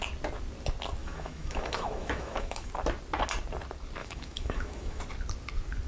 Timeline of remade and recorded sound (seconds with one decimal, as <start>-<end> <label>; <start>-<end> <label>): 0.0-1.0 recorded; 1.0-2.7 remade; 2.7-4.0 recorded; 4.0-5.0 remade; 5.0-5.9 recorded